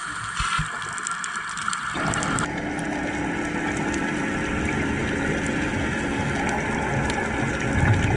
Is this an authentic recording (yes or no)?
yes